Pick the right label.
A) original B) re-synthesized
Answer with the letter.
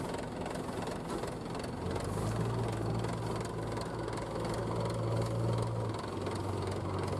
A